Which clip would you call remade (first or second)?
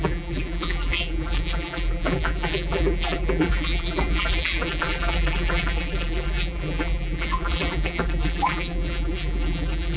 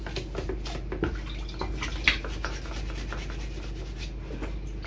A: first